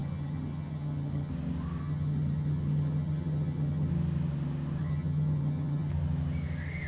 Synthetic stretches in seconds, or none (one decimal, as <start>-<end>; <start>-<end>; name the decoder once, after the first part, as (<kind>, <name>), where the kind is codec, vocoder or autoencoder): 0.0-1.3 (vocoder, HiFi-GAN); 1.8-3.9; 4.8-5.9